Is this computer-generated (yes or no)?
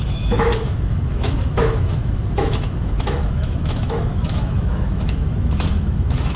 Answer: yes